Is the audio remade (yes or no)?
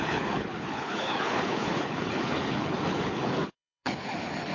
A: yes